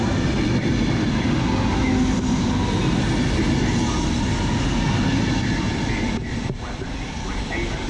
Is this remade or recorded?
recorded